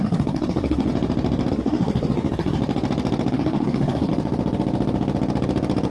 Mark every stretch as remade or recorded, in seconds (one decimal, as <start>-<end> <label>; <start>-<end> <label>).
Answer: 0.0-0.9 remade; 0.9-1.5 recorded; 1.5-2.6 remade; 2.6-3.3 recorded; 3.3-4.1 remade; 4.1-5.9 recorded